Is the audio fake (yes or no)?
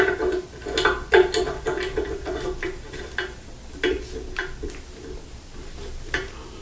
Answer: no